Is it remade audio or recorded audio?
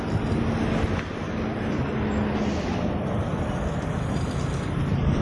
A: recorded